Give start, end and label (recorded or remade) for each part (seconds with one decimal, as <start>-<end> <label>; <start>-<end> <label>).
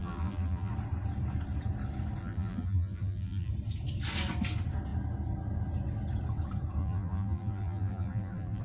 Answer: 0.0-0.7 remade; 0.7-2.2 recorded; 2.2-3.5 remade; 3.5-6.8 recorded; 6.8-8.6 remade